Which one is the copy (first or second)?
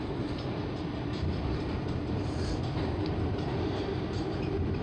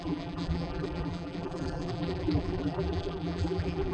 second